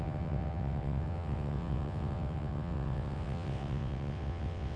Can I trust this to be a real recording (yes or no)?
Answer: no